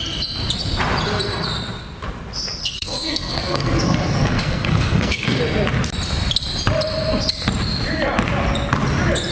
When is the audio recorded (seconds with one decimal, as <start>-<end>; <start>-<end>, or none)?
0.0-2.6; 5.4-9.3